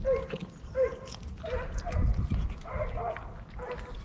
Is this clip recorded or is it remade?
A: recorded